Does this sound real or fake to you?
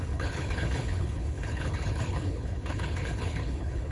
fake